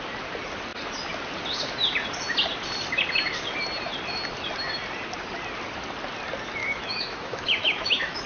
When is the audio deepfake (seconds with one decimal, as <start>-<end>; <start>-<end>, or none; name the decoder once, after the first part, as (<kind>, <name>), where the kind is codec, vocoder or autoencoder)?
6.6-8.3 (autoencoder, DAC-VAE)